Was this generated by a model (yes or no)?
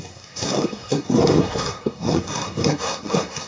yes